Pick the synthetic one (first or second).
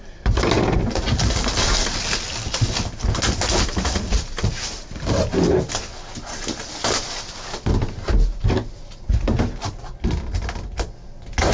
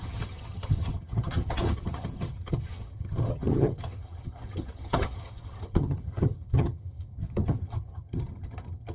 second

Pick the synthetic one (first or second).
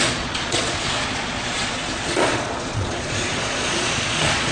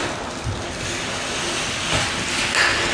first